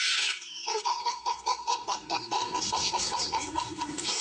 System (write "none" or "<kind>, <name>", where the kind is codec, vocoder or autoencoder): codec, SNAC